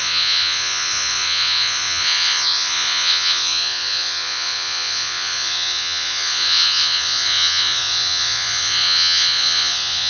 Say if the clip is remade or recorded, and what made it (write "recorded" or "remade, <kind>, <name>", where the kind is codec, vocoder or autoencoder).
remade, vocoder, Vocos